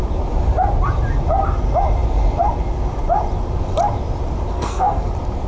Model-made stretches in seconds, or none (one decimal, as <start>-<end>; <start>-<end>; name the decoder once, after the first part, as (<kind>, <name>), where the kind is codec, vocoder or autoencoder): 4.5-5.1 (codec, SNAC)